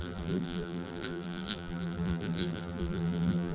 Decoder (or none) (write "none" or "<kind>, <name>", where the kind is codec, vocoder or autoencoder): vocoder, BigVGAN v2